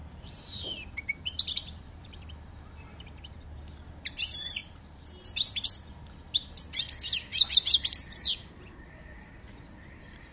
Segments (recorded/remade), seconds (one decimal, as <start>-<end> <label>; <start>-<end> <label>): 0.0-3.6 remade; 3.6-4.6 recorded; 4.6-5.2 remade; 5.2-7.3 recorded; 7.3-10.3 remade